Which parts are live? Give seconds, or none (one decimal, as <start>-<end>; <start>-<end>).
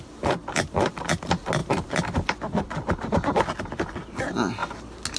0.0-0.4; 1.1-1.6; 4.0-5.2